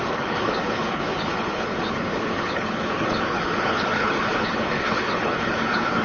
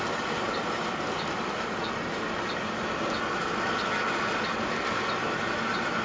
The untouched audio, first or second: second